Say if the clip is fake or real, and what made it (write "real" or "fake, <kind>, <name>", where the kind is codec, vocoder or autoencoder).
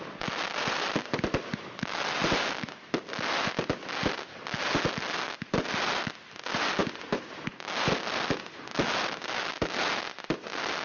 real